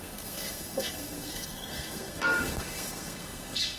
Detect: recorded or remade remade